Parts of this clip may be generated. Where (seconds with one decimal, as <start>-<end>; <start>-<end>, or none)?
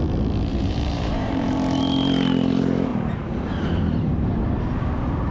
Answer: 0.5-1.8; 2.9-4.5